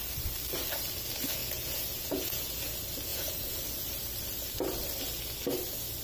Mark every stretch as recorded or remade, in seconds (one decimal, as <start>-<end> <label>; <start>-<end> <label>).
0.0-1.4 recorded; 1.4-2.6 remade; 2.6-3.1 recorded; 3.1-3.6 remade; 3.6-6.0 recorded